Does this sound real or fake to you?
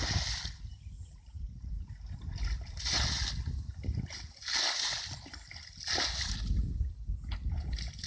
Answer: real